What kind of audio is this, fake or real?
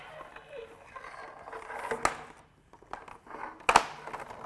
real